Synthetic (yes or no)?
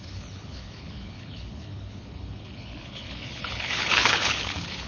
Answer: yes